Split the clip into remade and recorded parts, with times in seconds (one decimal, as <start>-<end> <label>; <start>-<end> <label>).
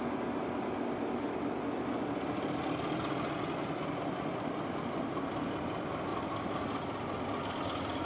0.0-8.1 recorded